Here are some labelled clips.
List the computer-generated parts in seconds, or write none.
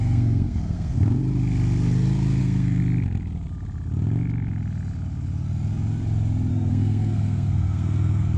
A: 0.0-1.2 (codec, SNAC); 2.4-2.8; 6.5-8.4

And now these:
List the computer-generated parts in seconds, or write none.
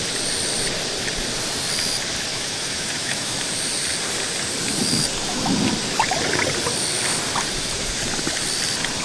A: 2.3-3.5 (autoencoder, DAC-VAE)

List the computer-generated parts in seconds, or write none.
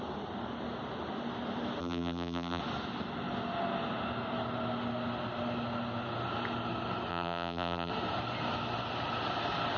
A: 1.8-2.6 (vocoder, BigVGAN v2); 7.1-7.9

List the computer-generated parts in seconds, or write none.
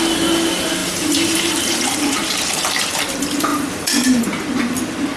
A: 0.8-3.0 (vocoder, BigVGAN v2); 3.5-4.2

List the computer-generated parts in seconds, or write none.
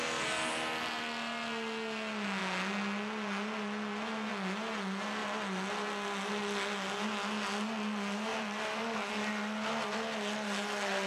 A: 8.3-9.1 (vocoder, BigVGAN v2)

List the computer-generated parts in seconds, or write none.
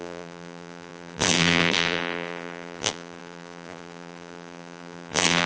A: 0.0-5.5 (vocoder, BigVGAN v2)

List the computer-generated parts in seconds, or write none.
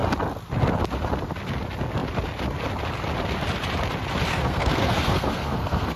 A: 4.3-6.0 (codec, SNAC)